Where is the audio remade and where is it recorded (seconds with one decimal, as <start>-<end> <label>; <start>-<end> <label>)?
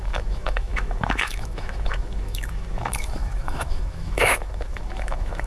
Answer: 0.0-5.5 remade